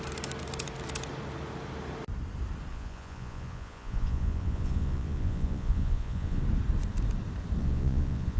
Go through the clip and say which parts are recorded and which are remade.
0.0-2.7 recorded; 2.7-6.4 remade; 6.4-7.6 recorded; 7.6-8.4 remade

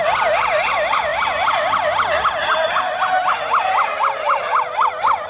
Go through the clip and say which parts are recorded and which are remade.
0.0-5.3 recorded

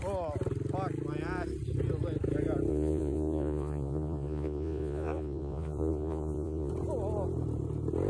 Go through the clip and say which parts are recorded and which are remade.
0.0-2.7 recorded; 2.7-6.7 remade; 6.7-8.1 recorded

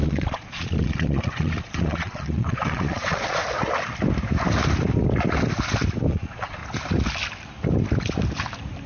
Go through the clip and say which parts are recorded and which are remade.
0.0-3.4 remade; 3.4-6.1 recorded; 6.1-6.6 remade; 6.6-8.9 recorded

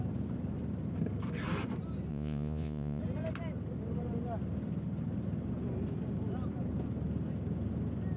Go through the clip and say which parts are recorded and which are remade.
0.0-2.1 recorded; 2.1-3.0 remade; 3.0-8.2 recorded

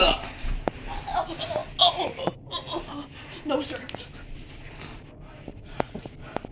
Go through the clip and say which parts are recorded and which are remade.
0.0-5.5 recorded; 5.5-6.1 remade; 6.1-6.5 recorded

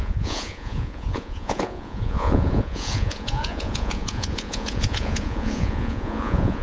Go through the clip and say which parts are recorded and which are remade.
0.0-6.6 remade